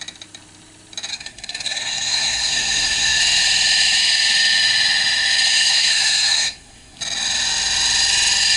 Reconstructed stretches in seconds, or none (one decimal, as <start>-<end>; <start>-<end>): 1.1-3.2; 5.6-7.0

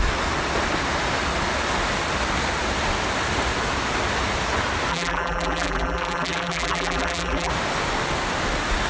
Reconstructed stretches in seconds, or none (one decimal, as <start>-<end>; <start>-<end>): 4.9-7.5

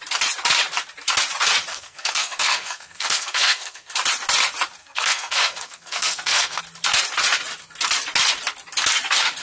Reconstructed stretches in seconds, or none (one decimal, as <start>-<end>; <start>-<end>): 1.7-3.9; 4.8-6.6

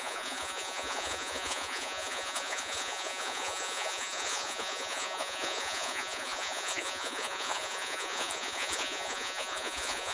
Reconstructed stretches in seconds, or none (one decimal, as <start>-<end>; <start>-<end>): 0.0-10.1

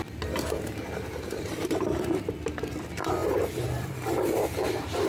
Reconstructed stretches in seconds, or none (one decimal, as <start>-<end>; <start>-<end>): 0.8-2.0; 3.2-5.1